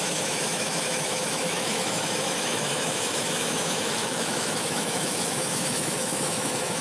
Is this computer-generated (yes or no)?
yes